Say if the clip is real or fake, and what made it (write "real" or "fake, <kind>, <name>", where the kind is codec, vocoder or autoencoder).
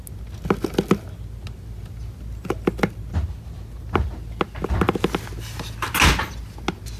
real